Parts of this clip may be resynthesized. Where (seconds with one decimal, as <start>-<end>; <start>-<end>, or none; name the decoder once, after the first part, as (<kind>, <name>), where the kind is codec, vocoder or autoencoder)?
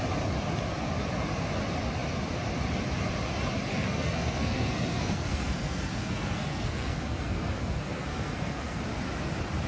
3.7-8.8 (codec, SNAC)